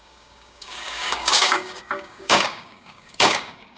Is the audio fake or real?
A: fake